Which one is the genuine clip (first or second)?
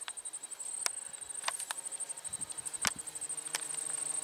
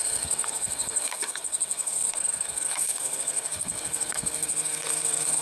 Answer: first